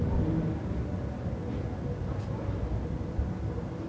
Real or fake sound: real